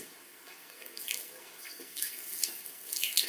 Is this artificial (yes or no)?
yes